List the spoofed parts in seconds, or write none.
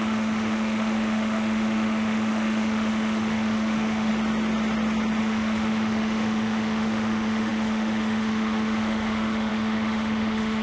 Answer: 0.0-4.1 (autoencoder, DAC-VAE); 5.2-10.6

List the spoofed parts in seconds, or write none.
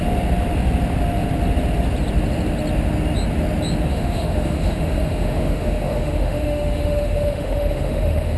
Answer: 3.9-8.4 (autoencoder, DAC-VAE)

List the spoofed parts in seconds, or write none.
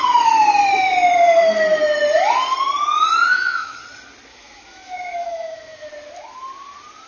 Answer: 3.3-3.8 (autoencoder, DAC-VAE); 4.3-5.9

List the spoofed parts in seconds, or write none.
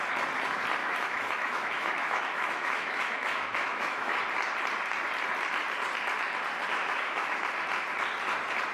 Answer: 0.8-4.2 (autoencoder, DAC-VAE); 6.7-7.4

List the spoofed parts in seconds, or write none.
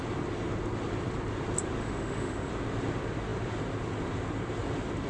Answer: 1.8-2.5 (autoencoder, DAC-VAE)